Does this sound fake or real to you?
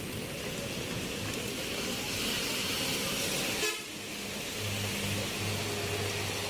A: real